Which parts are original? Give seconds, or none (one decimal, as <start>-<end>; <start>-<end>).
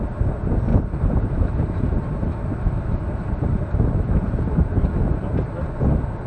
0.0-0.7; 4.5-6.3